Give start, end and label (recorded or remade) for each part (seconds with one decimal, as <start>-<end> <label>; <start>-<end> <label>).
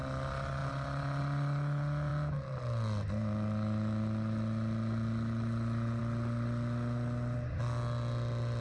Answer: 0.0-8.6 recorded